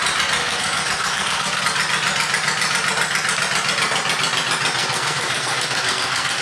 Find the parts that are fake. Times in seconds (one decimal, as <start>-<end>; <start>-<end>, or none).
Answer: 0.4-1.6; 4.8-6.4